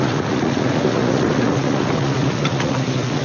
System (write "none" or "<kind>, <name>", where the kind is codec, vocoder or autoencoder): vocoder, Vocos